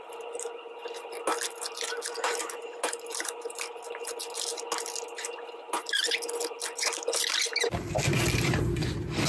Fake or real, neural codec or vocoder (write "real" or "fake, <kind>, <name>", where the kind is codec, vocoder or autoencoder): real